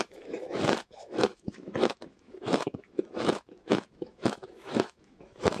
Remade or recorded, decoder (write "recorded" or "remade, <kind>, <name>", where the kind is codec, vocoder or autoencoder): remade, autoencoder, DAC-VAE